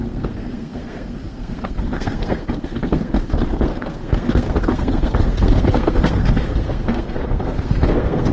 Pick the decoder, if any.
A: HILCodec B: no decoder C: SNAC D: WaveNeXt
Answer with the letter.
C